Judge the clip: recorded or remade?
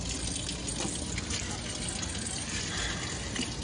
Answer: recorded